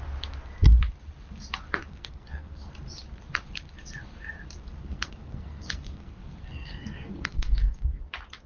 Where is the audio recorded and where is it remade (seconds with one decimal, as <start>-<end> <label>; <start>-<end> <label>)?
0.0-1.9 recorded; 1.9-2.7 remade; 2.7-4.8 recorded; 4.8-8.0 remade; 8.0-8.5 recorded